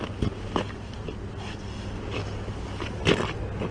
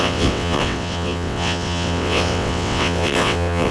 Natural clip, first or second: first